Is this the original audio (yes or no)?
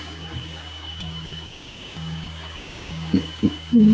no